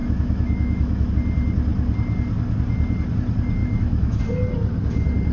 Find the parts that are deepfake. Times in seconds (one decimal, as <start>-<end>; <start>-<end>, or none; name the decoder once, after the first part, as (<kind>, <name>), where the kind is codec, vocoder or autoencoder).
0.0-1.1 (autoencoder, DAC-VAE); 3.6-4.2